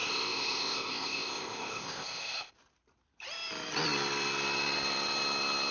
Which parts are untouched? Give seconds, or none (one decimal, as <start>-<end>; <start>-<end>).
2.5-5.7